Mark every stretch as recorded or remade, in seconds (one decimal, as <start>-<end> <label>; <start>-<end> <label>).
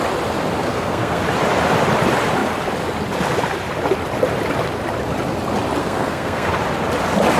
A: 0.0-0.6 recorded; 0.6-1.2 remade; 1.2-5.8 recorded; 5.8-6.5 remade; 6.5-7.4 recorded